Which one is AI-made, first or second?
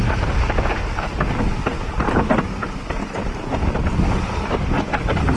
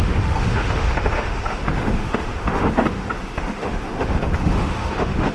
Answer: second